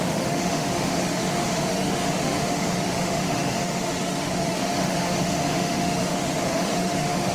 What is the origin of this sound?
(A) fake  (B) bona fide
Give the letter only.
A